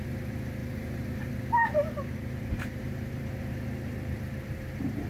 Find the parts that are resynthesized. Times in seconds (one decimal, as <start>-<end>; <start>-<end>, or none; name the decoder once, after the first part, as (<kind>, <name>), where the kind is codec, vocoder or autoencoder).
0.6-3.7 (vocoder, BigVGAN v2)